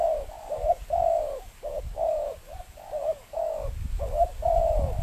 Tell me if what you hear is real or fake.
fake